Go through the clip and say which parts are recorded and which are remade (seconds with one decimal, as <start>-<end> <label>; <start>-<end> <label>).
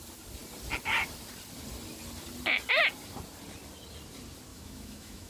0.0-4.5 recorded; 4.5-5.3 remade